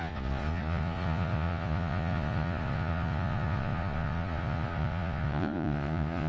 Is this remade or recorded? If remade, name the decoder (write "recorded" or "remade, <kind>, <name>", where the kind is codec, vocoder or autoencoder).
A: remade, vocoder, Vocos